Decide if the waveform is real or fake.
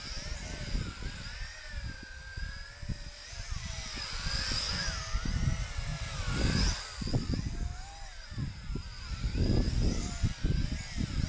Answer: real